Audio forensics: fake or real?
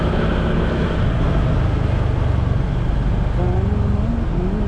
real